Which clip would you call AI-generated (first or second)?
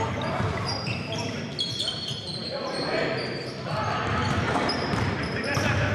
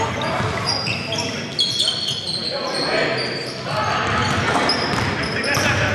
first